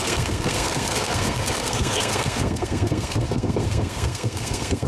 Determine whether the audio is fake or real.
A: fake